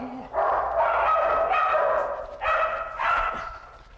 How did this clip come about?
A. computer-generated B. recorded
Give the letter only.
B